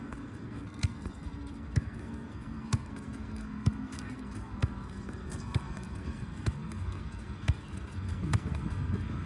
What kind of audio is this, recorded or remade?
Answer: remade